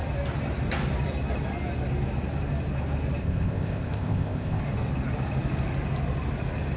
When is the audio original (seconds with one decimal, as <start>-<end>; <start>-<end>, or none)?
0.0-3.2; 4.6-6.8